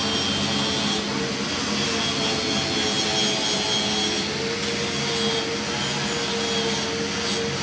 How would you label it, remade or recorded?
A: recorded